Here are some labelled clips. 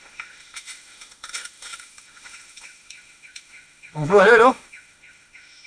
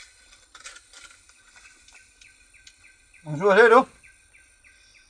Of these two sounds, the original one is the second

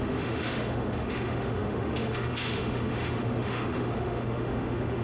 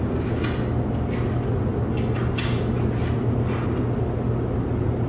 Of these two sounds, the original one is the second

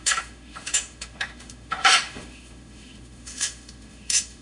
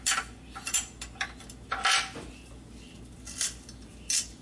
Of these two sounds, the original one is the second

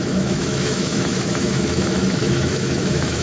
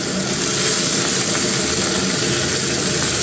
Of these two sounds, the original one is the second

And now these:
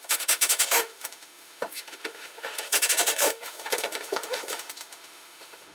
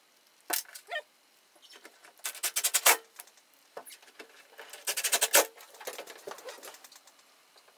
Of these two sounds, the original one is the second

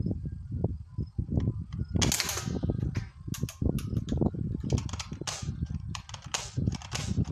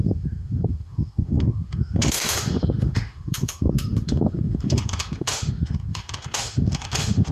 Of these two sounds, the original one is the first